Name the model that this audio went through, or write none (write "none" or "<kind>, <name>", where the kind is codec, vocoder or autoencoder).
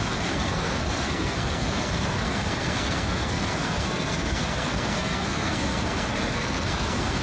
codec, SNAC